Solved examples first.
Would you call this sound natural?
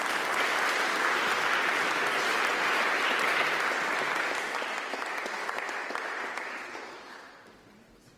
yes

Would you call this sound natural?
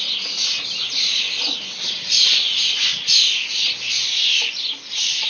yes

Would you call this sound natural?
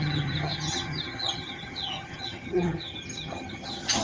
no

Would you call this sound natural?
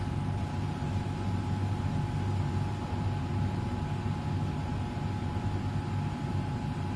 yes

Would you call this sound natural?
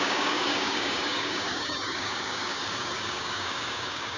no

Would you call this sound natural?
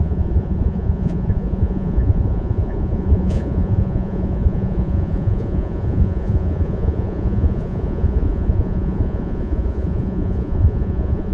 no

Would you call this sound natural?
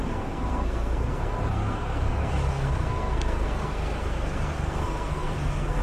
no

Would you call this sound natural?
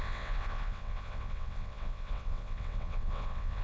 no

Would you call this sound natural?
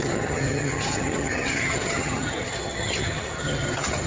no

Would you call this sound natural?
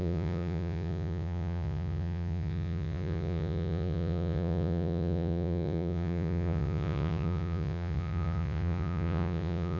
no